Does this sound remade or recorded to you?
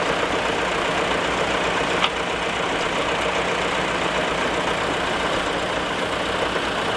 recorded